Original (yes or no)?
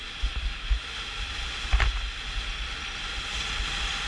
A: yes